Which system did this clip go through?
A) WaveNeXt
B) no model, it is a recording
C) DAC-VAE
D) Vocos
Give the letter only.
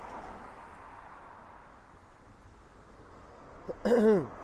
B